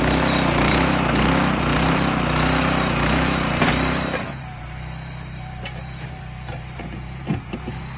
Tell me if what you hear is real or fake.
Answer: fake